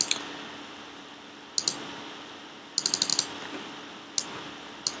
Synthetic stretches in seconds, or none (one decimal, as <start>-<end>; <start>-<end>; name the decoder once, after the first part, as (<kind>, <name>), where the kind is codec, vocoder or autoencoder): none